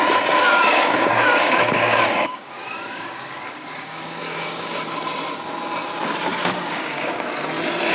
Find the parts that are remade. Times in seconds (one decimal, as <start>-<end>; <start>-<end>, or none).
0.5-4.8; 6.3-7.3